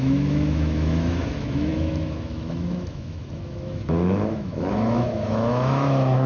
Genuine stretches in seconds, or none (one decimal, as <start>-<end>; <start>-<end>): none